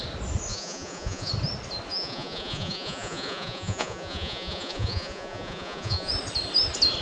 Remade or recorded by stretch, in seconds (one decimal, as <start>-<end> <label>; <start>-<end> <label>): 0.0-0.5 recorded; 0.5-1.3 remade; 1.3-1.9 recorded; 1.9-6.1 remade; 6.1-7.0 recorded